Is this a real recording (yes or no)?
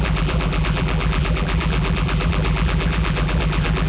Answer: no